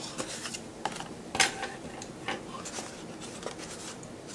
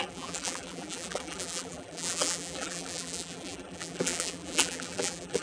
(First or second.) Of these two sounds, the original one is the first